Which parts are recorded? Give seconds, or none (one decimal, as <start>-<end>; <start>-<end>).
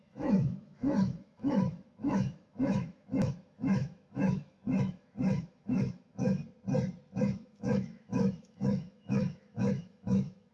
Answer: 6.4-7.2